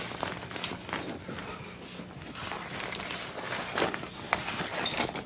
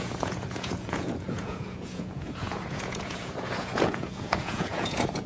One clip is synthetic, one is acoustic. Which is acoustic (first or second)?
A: first